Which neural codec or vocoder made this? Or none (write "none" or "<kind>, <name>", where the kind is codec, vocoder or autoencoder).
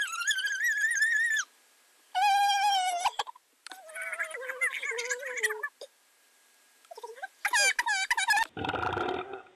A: none